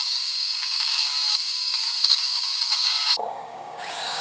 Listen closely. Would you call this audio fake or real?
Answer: fake